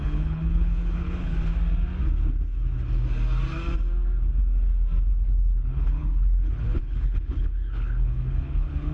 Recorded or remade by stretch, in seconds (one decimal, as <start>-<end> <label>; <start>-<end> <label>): 0.0-1.3 remade; 1.3-5.1 recorded; 5.1-8.9 remade